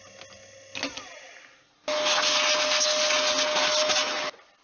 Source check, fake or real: real